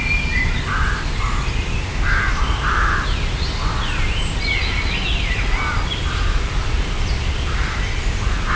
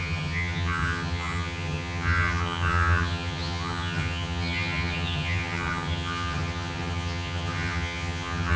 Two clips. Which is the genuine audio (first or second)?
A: first